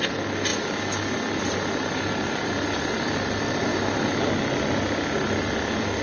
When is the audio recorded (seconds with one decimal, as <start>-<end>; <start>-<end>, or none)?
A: 0.0-3.7; 4.2-6.0